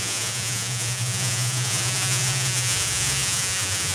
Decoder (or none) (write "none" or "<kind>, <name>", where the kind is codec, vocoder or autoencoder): vocoder, Vocos